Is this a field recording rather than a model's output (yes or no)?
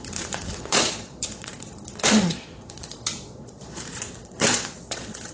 no